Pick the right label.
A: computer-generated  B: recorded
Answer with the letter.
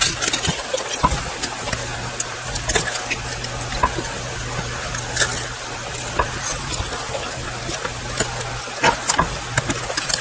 B